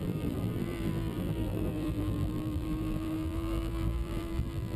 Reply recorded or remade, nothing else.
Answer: remade